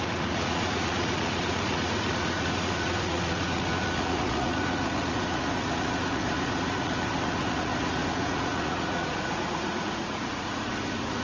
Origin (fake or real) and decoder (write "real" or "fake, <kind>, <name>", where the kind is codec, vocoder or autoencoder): fake, vocoder, Vocos